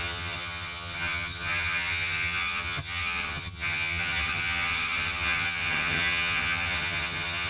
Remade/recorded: remade